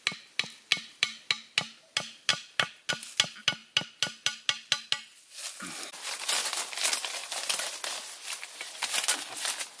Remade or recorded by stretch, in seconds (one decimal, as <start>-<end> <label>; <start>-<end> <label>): 0.0-0.7 recorded; 0.7-1.3 remade; 1.3-9.8 recorded